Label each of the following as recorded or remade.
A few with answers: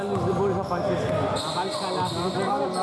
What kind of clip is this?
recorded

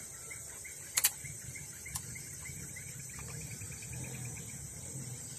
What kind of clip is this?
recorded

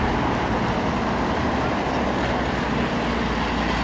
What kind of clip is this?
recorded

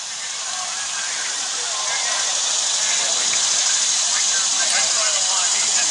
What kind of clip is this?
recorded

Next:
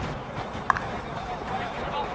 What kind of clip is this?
remade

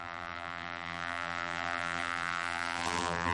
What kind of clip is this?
remade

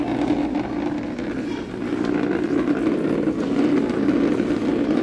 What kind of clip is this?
recorded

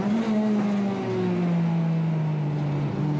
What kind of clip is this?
recorded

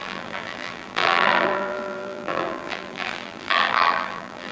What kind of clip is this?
remade